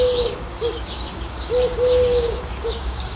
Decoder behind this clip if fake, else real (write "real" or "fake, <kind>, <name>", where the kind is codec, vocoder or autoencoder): fake, codec, DAC